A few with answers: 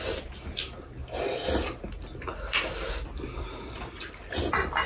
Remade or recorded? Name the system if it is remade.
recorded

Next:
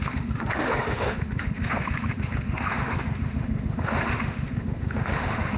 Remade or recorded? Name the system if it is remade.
remade, autoencoder, DAC-VAE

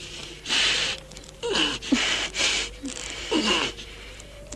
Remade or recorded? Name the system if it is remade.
recorded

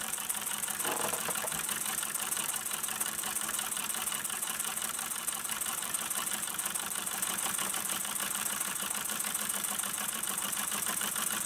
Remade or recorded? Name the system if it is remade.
remade, vocoder, BigVGAN v2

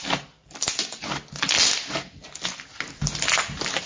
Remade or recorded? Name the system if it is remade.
recorded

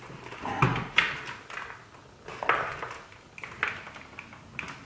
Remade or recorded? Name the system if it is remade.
recorded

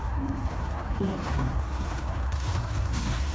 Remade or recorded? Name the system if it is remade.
remade, codec, SNAC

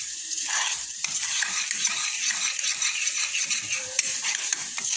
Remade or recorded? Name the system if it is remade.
remade, vocoder, BigVGAN v2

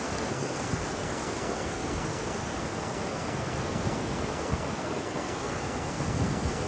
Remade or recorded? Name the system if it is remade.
remade, codec, SNAC